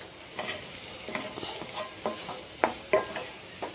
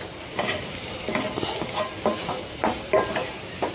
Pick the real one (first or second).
first